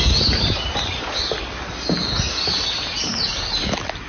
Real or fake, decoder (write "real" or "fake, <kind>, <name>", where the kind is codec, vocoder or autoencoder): real